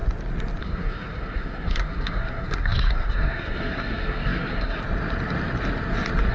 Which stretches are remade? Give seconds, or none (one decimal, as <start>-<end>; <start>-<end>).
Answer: 0.6-4.8